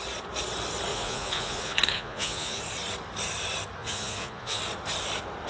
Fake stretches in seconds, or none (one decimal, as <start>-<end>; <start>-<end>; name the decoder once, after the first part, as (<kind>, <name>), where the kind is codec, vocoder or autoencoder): 0.9-2.6 (vocoder, Vocos); 3.8-4.6